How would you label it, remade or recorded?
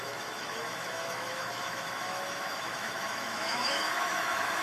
remade